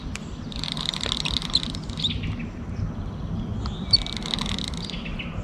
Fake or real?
real